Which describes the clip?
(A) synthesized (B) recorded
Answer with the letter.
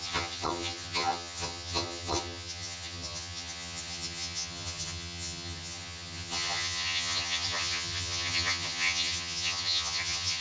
A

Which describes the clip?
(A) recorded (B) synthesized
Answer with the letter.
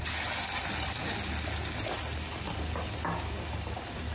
A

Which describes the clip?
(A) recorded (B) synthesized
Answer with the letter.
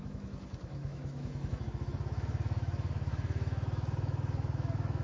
B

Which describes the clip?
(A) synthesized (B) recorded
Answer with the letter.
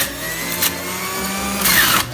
B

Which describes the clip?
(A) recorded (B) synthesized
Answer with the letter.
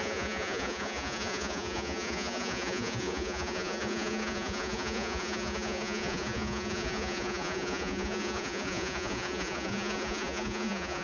B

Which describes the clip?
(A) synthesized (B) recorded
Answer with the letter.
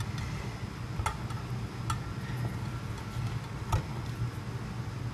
B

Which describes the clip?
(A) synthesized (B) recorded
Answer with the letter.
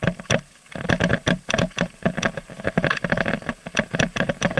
B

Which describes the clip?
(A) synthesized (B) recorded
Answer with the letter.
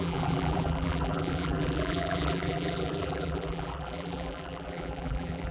A